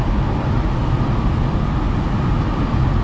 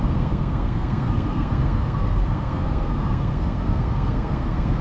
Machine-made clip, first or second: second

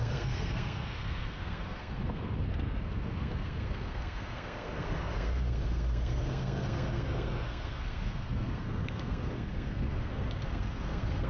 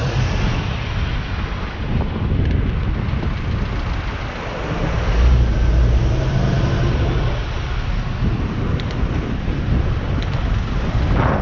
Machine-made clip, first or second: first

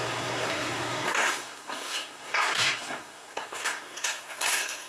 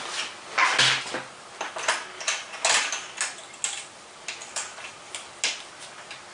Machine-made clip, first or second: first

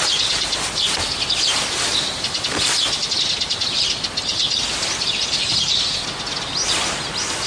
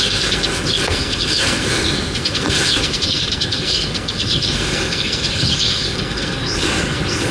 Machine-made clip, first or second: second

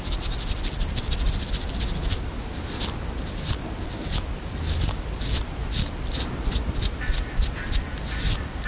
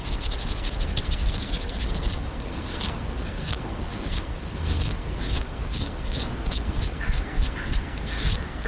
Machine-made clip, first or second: second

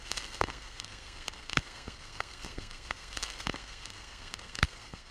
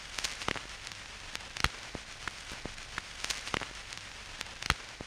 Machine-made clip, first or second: first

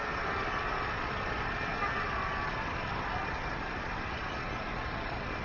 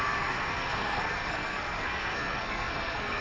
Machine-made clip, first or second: second